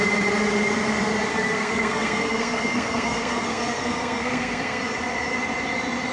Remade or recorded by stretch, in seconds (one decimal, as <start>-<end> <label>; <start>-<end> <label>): 0.0-1.3 recorded; 1.3-4.8 remade; 4.8-6.1 recorded